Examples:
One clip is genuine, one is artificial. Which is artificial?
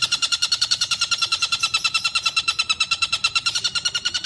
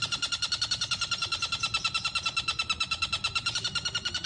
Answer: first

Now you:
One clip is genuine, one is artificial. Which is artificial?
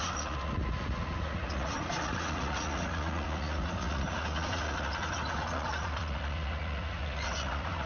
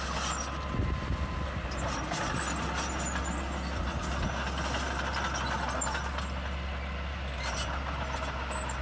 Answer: first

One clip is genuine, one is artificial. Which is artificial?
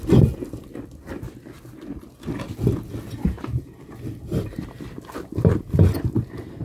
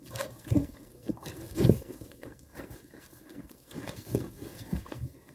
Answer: second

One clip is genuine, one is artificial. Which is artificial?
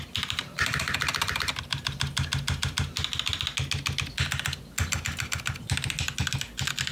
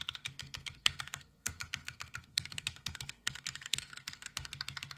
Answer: second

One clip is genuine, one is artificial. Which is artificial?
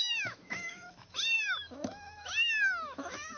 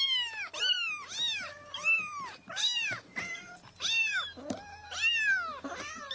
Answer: first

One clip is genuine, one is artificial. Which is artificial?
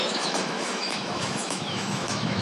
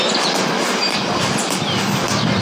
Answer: first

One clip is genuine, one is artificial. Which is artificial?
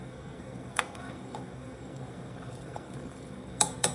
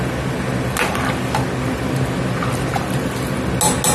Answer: first